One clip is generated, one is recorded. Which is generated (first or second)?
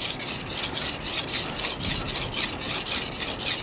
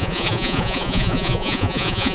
second